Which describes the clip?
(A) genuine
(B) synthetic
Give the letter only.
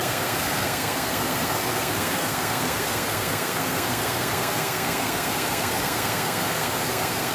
B